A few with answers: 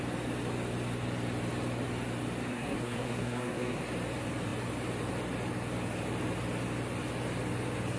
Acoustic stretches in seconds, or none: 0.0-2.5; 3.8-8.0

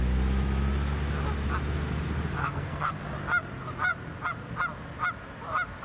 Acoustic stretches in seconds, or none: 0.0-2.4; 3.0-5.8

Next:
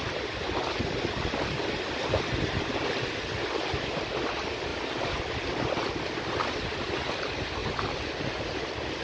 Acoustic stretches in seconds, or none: 0.0-9.0

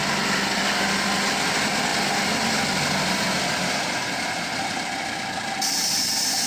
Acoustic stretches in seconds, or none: 0.0-6.5

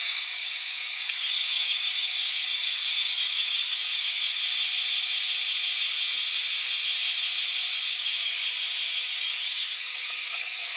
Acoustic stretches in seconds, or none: 4.4-7.9; 8.4-9.1

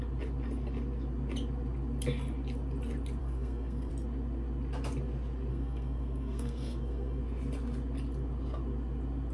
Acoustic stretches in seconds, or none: 0.0-3.2; 3.9-5.5; 7.2-9.3